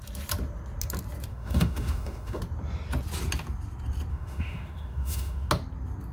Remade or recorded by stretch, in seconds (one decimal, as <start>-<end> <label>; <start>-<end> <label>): 0.0-1.3 recorded; 1.3-2.4 remade; 2.4-4.1 recorded; 4.1-5.5 remade; 5.5-6.1 recorded